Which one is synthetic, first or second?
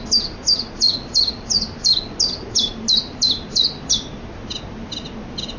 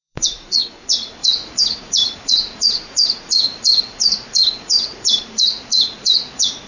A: second